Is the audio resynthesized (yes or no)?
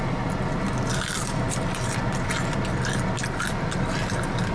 no